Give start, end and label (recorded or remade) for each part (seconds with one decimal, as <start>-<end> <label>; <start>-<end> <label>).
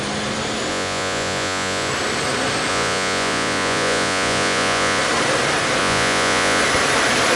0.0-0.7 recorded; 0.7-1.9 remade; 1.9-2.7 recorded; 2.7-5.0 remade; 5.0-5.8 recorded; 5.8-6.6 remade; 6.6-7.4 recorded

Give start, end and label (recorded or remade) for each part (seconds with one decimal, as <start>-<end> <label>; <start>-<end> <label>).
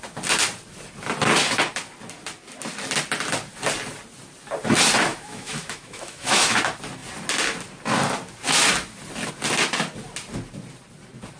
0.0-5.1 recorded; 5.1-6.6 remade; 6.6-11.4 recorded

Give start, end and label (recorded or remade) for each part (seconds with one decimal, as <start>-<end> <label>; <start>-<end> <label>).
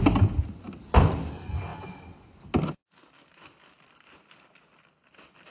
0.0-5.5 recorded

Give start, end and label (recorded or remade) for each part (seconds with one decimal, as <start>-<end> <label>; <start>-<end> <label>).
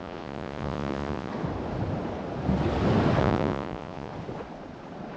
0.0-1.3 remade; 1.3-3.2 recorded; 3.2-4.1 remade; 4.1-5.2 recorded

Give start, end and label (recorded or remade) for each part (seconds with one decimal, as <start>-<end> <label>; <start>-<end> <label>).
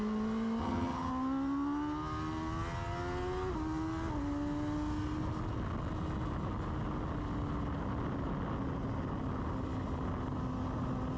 0.0-0.6 recorded; 0.6-1.1 remade; 1.1-11.2 recorded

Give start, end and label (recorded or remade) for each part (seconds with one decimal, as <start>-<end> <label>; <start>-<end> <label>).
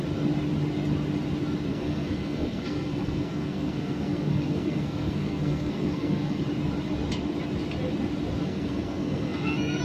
0.0-1.7 recorded; 1.7-6.4 remade; 6.4-8.4 recorded; 8.4-9.8 remade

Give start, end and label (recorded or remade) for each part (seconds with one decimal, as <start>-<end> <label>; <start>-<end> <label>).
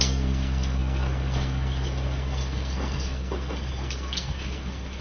0.0-5.0 remade